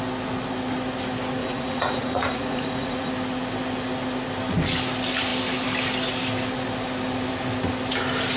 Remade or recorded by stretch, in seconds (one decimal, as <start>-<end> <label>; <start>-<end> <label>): 0.0-1.4 recorded; 1.4-3.1 remade; 3.1-8.4 recorded